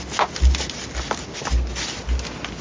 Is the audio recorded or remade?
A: recorded